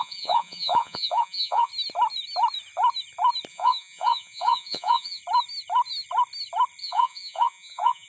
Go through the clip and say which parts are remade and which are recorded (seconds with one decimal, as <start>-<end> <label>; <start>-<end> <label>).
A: 0.0-1.7 remade; 1.7-3.5 recorded; 3.5-5.2 remade; 5.2-6.8 recorded; 6.8-8.1 remade